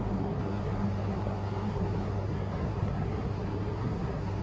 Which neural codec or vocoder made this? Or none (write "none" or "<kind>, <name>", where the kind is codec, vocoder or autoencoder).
codec, SNAC